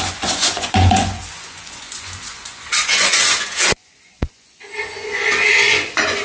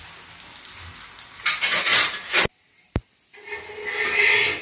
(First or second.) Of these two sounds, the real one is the second